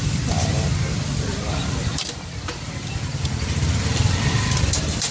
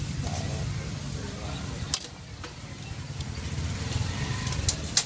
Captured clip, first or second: second